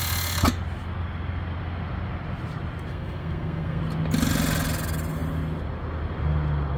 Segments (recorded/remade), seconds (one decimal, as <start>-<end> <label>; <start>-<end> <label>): 0.0-2.9 recorded; 2.9-3.8 remade; 3.8-6.8 recorded

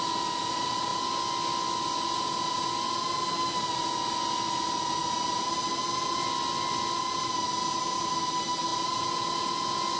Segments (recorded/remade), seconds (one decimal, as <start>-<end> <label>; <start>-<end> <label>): 0.0-10.0 recorded

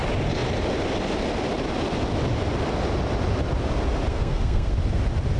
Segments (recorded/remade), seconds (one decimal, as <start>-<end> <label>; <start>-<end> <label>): 0.0-4.1 recorded; 4.1-4.7 remade; 4.7-5.4 recorded

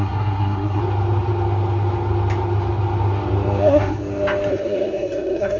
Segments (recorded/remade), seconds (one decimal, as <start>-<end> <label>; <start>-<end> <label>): 0.0-0.8 remade; 0.8-3.6 recorded; 3.6-4.0 remade; 4.0-4.5 recorded; 4.5-5.6 remade

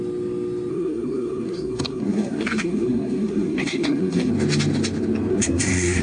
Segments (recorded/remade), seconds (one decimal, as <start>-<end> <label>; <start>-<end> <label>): 0.0-0.7 recorded; 0.7-4.3 remade; 4.3-5.3 recorded; 5.3-6.0 remade

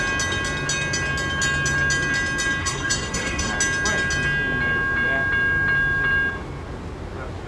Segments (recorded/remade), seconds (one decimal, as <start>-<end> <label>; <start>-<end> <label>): 0.0-2.6 recorded; 2.6-3.5 remade; 3.5-7.5 recorded